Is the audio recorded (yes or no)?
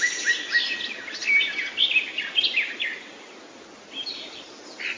yes